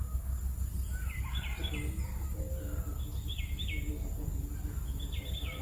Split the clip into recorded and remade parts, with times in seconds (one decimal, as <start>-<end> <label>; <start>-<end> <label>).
0.0-5.6 recorded